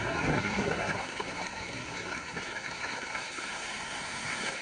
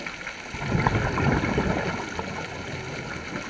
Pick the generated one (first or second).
first